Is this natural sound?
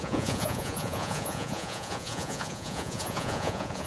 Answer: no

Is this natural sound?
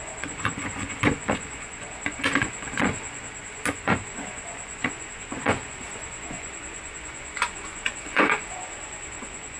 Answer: no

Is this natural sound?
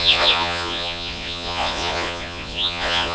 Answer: no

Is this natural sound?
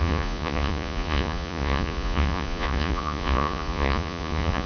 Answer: no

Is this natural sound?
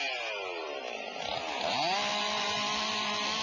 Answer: yes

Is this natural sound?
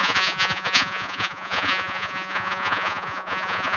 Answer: no